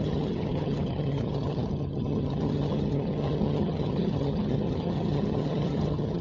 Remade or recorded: remade